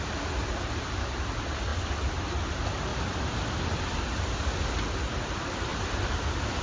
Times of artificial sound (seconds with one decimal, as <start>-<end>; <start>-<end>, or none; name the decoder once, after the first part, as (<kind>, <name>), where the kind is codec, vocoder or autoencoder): none